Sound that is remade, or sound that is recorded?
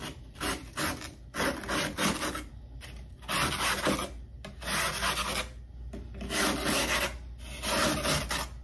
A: recorded